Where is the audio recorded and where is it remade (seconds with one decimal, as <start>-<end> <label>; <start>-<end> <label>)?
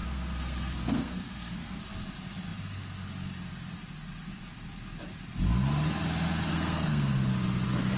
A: 0.0-1.8 remade; 1.8-6.5 recorded; 6.5-7.3 remade; 7.3-8.0 recorded